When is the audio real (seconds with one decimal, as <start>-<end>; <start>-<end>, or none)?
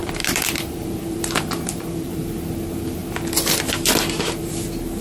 2.2-5.0